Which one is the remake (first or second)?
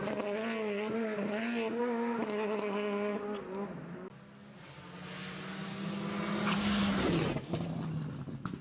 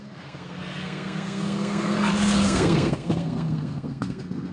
second